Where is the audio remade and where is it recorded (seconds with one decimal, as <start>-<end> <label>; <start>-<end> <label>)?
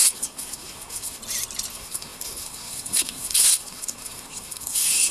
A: 0.0-1.2 remade; 1.2-1.7 recorded; 1.7-5.1 remade